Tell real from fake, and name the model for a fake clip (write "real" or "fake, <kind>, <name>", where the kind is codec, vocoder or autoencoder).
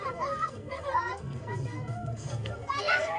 fake, codec, SNAC